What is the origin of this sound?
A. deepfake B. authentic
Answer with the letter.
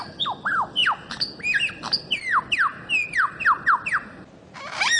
B